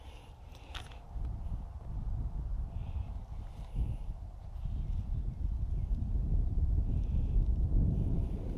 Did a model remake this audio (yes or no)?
no